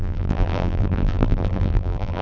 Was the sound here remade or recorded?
remade